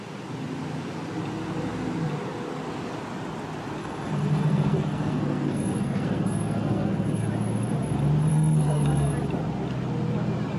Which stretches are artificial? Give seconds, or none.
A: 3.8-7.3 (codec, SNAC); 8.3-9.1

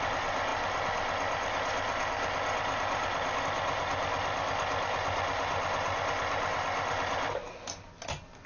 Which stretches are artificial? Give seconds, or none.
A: none